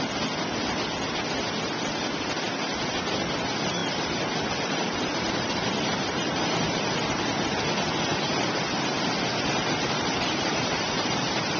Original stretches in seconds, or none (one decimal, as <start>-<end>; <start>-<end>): 0.0-3.8; 7.6-8.1